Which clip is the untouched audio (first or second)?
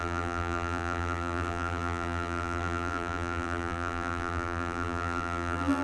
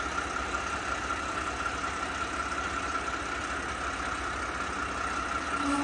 second